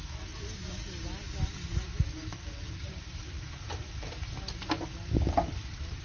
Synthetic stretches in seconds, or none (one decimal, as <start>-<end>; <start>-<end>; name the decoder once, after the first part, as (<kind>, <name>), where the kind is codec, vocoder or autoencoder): none